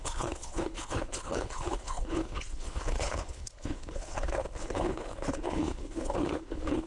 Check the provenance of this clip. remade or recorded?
remade